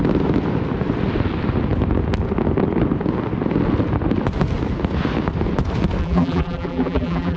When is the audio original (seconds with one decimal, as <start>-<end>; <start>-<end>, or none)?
0.0-6.0